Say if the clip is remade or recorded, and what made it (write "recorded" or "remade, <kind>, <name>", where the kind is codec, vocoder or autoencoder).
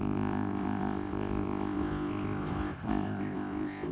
remade, codec, ZipCodec